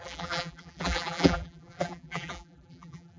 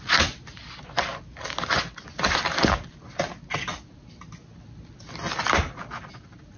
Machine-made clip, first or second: first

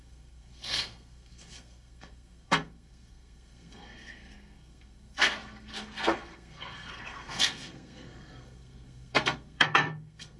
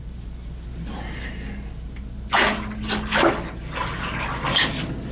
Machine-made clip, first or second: first